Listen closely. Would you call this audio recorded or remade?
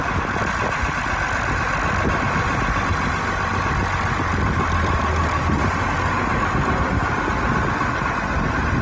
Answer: recorded